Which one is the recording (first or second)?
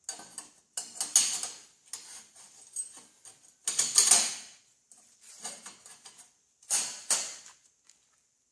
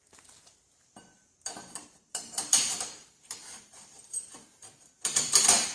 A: first